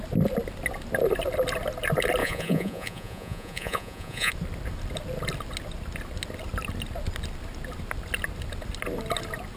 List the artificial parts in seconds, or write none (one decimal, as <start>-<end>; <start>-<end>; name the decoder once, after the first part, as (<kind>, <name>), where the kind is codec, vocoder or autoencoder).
2.2-4.3 (vocoder, Vocos)